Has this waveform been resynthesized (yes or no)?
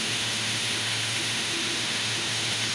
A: yes